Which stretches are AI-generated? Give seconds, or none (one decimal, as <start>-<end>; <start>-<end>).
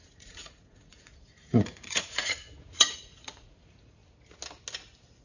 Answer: 0.0-4.0